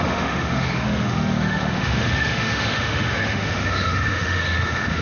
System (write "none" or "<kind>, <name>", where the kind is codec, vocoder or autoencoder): autoencoder, DAC-VAE